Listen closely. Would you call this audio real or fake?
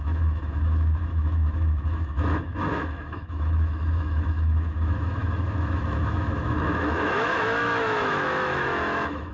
fake